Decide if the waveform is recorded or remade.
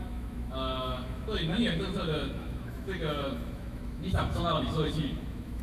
remade